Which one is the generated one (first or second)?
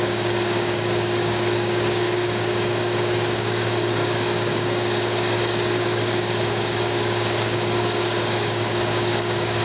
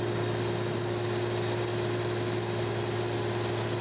first